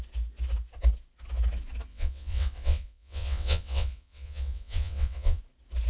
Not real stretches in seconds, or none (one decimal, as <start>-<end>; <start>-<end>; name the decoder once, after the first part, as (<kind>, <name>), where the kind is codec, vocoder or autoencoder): 1.9-5.4 (vocoder, WaveNeXt)